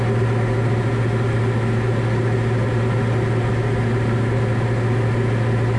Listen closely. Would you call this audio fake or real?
real